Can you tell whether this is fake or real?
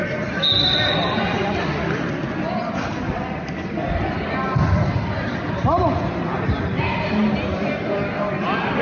real